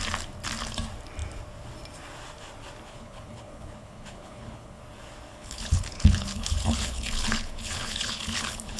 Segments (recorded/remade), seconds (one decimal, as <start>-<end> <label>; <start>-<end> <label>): 0.0-2.9 recorded; 2.9-4.8 remade; 4.8-5.3 recorded; 5.3-8.8 remade